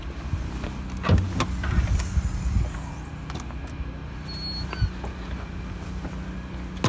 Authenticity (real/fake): real